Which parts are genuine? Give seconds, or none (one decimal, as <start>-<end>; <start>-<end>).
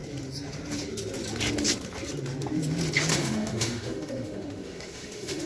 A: 0.0-3.1